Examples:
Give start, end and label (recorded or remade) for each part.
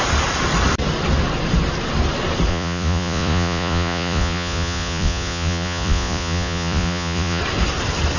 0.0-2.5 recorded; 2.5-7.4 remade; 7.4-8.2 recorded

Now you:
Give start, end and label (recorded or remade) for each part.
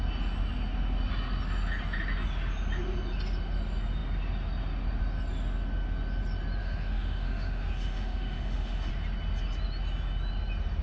0.0-6.6 recorded; 6.6-8.9 remade; 8.9-10.8 recorded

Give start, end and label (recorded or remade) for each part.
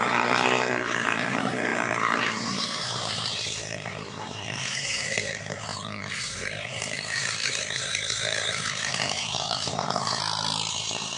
0.0-10.2 remade; 10.2-10.7 recorded; 10.7-11.2 remade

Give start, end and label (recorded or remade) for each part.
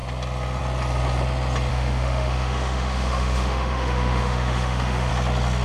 0.0-1.7 recorded; 1.7-5.1 remade; 5.1-5.6 recorded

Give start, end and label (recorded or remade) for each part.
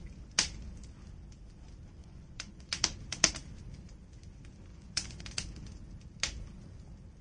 0.0-2.0 recorded; 2.0-2.7 remade; 2.7-4.7 recorded; 4.7-5.2 remade; 5.2-7.2 recorded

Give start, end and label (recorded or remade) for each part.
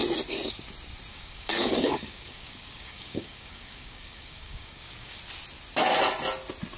0.0-1.1 recorded; 1.1-5.2 remade; 5.2-6.8 recorded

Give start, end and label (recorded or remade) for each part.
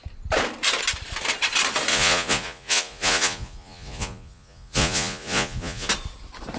0.0-1.9 recorded; 1.9-5.9 remade; 5.9-6.6 recorded